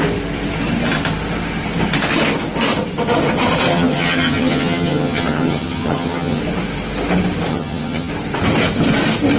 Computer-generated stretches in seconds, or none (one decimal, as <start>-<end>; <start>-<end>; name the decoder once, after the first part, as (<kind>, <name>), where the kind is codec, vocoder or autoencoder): 3.7-6.4 (vocoder, HiFi-GAN); 7.5-8.1